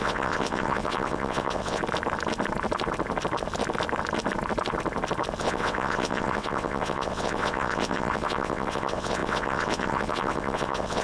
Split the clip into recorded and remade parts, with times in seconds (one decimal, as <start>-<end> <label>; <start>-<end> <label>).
0.0-1.8 remade; 1.8-5.4 recorded; 5.4-11.0 remade